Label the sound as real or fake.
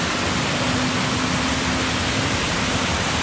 real